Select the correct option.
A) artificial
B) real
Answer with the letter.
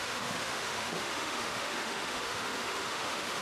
A